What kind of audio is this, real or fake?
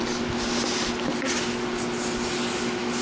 real